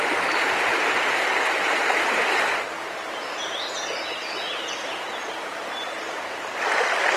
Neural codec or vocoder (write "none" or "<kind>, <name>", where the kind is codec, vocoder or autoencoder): none